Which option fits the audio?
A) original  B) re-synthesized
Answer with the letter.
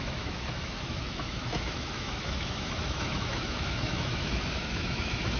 B